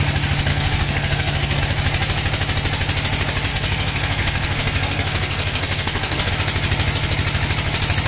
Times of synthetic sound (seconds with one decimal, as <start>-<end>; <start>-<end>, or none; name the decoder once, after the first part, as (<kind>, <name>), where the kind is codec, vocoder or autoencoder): 0.5-1.6 (codec, SNAC); 3.5-6.3